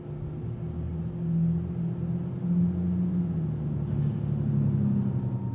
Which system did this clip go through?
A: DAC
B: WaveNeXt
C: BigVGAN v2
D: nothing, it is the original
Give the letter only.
D